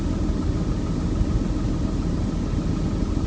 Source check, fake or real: real